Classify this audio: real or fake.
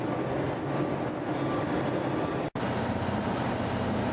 real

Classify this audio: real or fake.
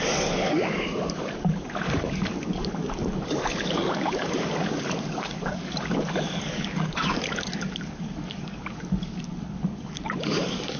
fake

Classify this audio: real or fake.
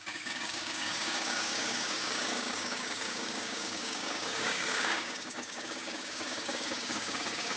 fake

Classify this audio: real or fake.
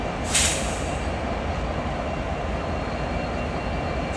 real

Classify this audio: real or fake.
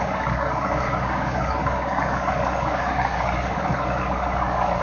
fake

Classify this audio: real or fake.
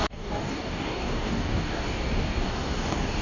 fake